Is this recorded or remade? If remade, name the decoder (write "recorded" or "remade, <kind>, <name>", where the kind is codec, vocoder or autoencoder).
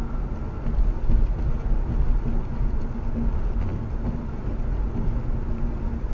recorded